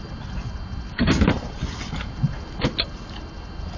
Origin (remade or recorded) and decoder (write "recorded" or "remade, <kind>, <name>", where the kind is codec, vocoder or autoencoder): recorded